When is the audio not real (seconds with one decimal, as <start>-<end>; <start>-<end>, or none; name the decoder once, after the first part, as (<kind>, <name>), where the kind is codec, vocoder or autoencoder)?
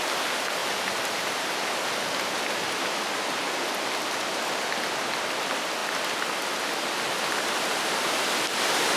none